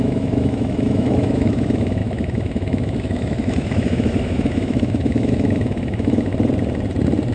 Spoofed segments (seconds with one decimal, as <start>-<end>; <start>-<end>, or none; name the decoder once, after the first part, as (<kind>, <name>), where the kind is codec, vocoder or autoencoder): 0.0-6.3 (autoencoder, DAC-VAE)